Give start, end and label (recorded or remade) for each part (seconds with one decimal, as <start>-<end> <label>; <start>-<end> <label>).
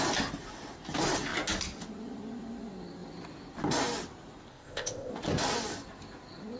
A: 0.0-4.5 recorded; 4.5-5.1 remade; 5.1-6.6 recorded